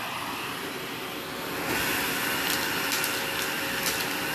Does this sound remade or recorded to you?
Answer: recorded